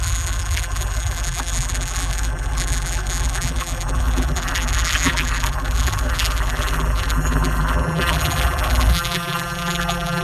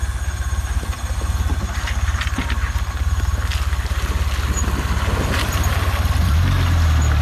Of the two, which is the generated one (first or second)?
first